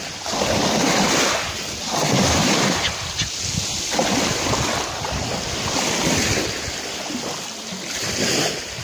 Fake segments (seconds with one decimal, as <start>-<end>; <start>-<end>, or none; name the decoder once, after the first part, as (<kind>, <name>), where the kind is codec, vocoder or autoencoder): none